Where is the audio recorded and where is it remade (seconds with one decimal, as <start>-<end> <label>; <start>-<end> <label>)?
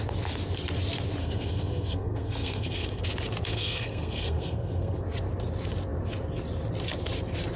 0.0-1.2 recorded; 1.2-3.0 remade; 3.0-3.5 recorded; 3.5-5.0 remade; 5.0-7.6 recorded